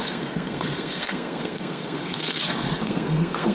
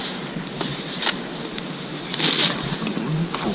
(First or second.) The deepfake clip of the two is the first